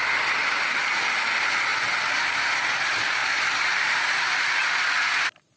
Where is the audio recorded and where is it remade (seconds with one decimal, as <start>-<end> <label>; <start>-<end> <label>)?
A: 0.0-3.2 recorded; 3.2-4.1 remade; 4.1-5.6 recorded